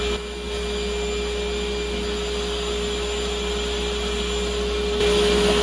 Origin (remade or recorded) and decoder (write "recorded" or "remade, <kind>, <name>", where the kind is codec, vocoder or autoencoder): recorded